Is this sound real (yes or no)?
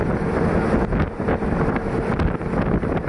yes